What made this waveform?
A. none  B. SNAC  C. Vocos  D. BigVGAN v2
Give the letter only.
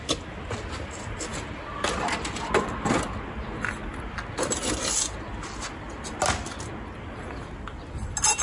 A